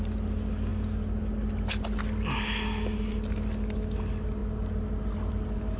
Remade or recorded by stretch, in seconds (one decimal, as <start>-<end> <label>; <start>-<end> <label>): 0.0-5.8 recorded